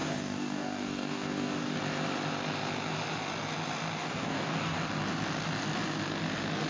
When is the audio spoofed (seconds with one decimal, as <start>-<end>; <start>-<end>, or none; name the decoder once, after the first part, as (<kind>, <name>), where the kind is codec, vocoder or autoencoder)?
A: 0.0-1.8 (codec, DAC); 4.0-4.8